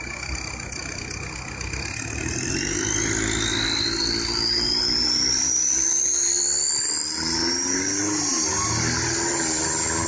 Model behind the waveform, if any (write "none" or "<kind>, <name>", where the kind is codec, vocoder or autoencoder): none